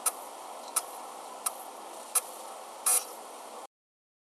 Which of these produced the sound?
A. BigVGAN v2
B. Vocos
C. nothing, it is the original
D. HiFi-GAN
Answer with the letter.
A